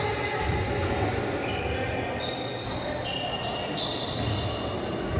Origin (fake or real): real